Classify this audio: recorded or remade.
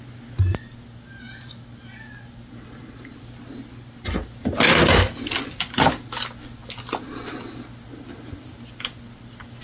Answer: recorded